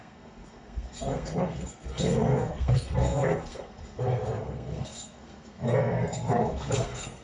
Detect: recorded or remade remade